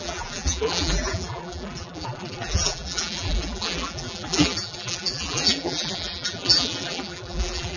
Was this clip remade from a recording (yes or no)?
yes